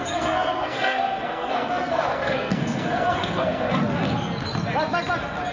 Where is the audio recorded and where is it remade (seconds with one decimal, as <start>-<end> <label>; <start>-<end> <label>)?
0.0-3.8 remade; 3.8-5.5 recorded